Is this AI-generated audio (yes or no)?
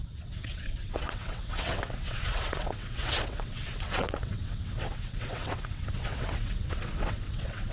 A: yes